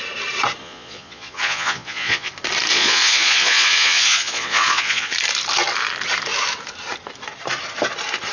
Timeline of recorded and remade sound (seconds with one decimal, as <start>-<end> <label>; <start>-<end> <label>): 0.0-0.6 recorded; 0.6-2.3 remade; 2.3-2.7 recorded; 2.7-5.1 remade; 5.1-8.3 recorded